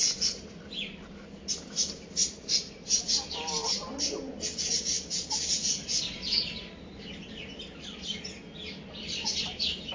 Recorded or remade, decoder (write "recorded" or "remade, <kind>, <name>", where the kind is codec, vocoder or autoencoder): recorded